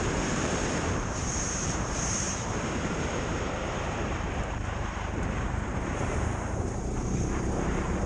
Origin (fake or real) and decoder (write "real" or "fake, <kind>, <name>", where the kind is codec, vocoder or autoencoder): fake, vocoder, BigVGAN v2